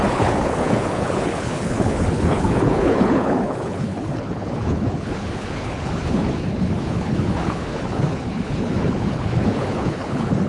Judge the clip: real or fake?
fake